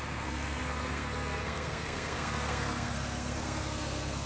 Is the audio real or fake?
fake